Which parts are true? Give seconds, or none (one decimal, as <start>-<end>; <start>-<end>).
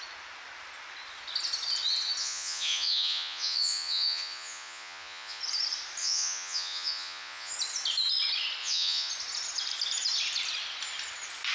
0.0-2.2; 5.4-6.0; 7.5-8.6; 9.1-11.5